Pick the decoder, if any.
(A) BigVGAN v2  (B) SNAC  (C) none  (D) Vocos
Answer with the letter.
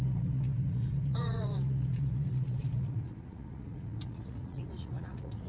D